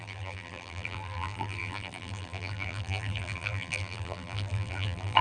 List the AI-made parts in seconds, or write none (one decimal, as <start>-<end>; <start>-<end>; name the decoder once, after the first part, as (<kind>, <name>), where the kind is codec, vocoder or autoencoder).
0.0-5.2 (vocoder, BigVGAN v2)